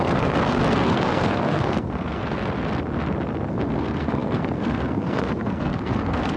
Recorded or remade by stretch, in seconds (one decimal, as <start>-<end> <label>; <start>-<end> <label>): 0.0-2.2 remade; 2.2-3.5 recorded; 3.5-6.4 remade